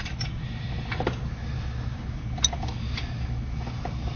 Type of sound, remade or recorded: recorded